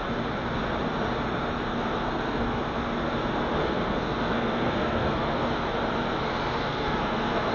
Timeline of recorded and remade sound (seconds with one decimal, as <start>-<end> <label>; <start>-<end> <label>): 0.0-1.7 recorded; 1.7-2.6 remade; 2.6-3.6 recorded; 3.6-5.5 remade; 5.5-6.3 recorded; 6.3-7.5 remade